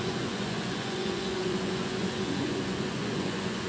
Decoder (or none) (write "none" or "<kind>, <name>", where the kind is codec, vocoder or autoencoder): vocoder, Vocos